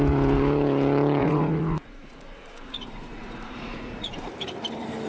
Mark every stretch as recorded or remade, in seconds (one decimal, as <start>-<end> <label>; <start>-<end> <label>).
0.0-1.2 recorded; 1.2-4.3 remade; 4.3-5.1 recorded